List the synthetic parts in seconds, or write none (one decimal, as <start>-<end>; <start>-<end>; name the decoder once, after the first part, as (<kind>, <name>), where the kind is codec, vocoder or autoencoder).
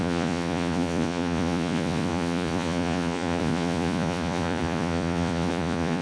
0.0-6.0 (vocoder, Vocos)